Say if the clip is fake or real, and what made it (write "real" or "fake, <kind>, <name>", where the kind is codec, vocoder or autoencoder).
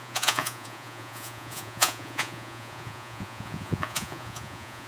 fake, vocoder, Vocos